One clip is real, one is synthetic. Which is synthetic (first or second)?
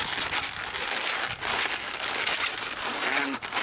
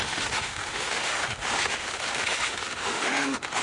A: second